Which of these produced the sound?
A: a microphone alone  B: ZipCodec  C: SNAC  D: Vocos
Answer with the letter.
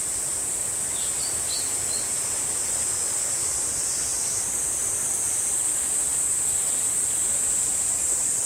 A